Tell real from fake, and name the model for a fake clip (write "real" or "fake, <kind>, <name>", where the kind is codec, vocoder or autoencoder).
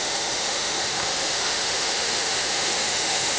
fake, autoencoder, DAC-VAE